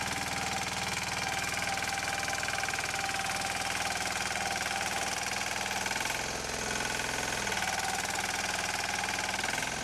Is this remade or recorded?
recorded